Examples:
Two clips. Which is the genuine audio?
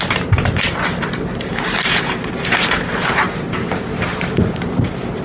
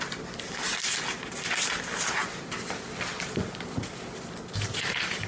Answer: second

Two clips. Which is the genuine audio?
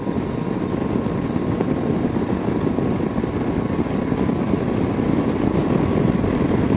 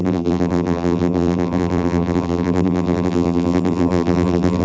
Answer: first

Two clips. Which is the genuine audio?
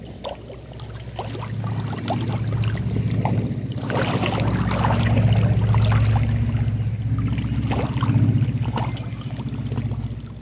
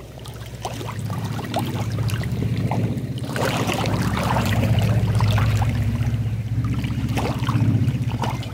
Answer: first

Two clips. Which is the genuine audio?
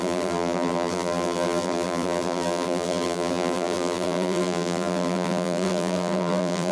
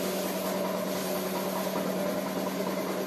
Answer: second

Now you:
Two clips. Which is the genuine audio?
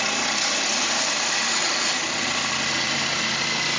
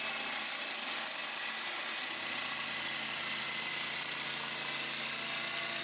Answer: second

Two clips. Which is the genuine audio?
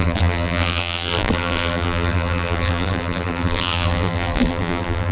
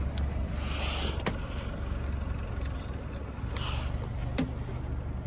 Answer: second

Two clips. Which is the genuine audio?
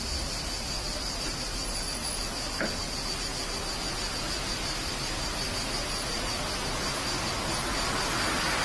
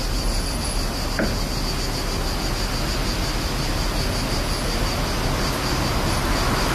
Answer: second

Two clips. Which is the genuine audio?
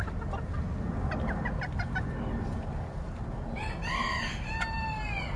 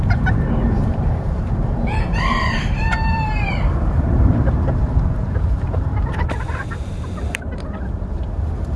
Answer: first